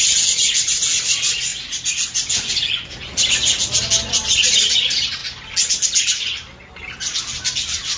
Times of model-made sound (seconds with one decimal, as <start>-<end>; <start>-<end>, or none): none